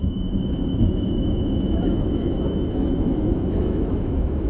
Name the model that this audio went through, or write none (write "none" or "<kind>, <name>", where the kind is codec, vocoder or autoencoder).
autoencoder, DAC-VAE